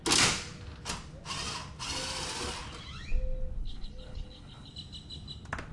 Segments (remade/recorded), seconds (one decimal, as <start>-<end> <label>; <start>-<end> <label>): 0.0-3.6 recorded; 3.6-4.7 remade; 4.7-5.7 recorded